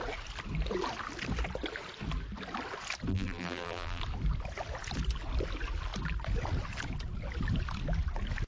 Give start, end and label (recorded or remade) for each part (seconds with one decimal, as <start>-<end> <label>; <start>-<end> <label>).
0.0-3.1 recorded; 3.1-4.0 remade; 4.0-8.5 recorded

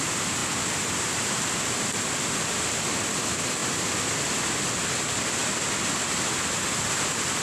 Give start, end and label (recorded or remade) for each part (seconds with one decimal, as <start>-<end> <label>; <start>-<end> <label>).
0.0-0.4 remade; 0.4-1.0 recorded; 1.0-7.4 remade

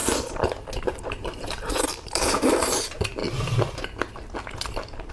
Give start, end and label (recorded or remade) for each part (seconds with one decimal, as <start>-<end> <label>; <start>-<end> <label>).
0.0-0.8 recorded; 0.8-3.2 remade; 3.2-5.1 recorded

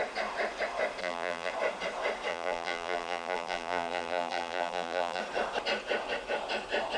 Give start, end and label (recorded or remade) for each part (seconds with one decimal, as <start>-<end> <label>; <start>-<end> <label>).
0.0-1.0 recorded; 1.0-1.5 remade; 1.5-2.3 recorded; 2.3-5.2 remade; 5.2-7.0 recorded

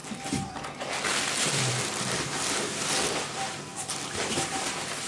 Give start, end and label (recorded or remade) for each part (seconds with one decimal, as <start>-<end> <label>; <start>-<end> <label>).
0.0-1.7 recorded; 1.7-5.1 remade

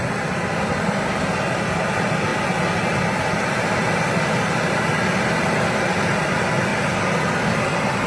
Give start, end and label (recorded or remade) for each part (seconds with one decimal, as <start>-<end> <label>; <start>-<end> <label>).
0.0-8.1 recorded

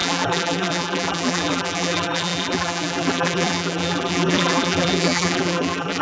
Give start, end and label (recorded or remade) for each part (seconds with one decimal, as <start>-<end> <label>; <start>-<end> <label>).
0.0-6.0 remade